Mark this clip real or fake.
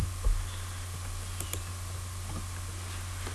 real